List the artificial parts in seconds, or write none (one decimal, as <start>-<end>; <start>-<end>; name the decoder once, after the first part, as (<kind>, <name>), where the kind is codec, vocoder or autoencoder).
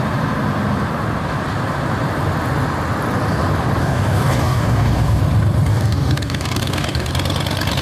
3.8-5.2 (codec, DAC); 5.7-7.1